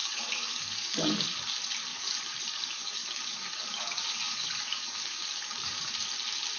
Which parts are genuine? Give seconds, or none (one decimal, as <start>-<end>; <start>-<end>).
1.4-1.9; 5.9-6.6